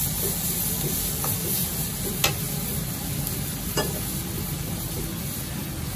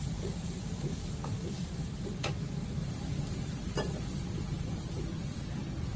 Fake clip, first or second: second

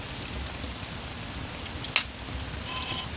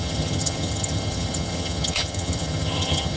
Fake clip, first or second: second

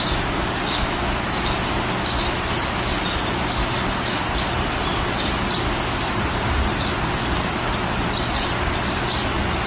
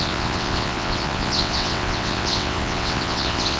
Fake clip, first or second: second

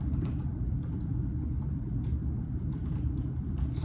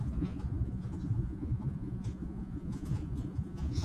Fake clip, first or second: second